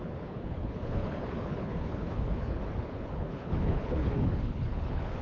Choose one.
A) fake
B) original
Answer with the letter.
A